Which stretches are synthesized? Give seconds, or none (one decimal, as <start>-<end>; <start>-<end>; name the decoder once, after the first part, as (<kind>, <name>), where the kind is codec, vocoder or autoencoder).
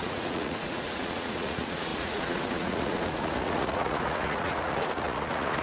0.0-5.6 (vocoder, Vocos)